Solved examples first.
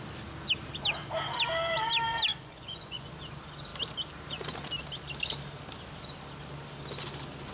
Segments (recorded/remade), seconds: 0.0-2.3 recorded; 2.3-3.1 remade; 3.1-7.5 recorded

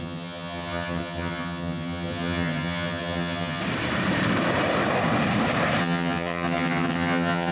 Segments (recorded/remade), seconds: 0.0-3.6 remade; 3.6-5.8 recorded; 5.8-7.5 remade

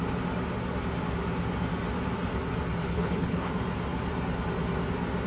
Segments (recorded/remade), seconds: 0.0-2.8 recorded; 2.8-3.5 remade; 3.5-5.3 recorded

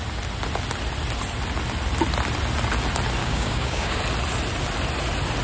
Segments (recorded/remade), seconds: 0.0-3.2 recorded; 3.2-4.0 remade; 4.0-5.4 recorded

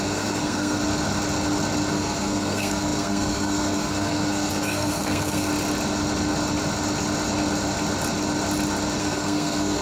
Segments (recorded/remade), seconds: 0.0-0.8 remade; 0.8-1.9 recorded; 1.9-5.5 remade; 5.5-9.0 recorded; 9.0-9.8 remade

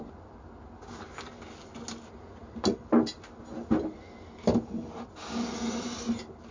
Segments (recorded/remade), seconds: 0.0-6.5 recorded

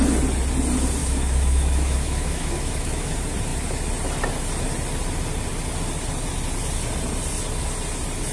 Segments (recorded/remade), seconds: 0.0-1.0 recorded; 1.0-3.1 remade; 3.1-8.3 recorded

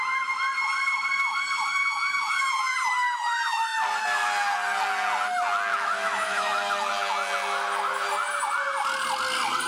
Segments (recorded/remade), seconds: 0.0-1.7 recorded; 1.7-2.2 remade; 2.2-5.7 recorded; 5.7-6.9 remade; 6.9-9.7 recorded